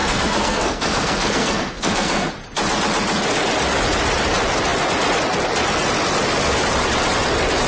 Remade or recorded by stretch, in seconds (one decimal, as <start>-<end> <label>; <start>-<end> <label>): 0.0-2.3 remade; 2.3-7.7 recorded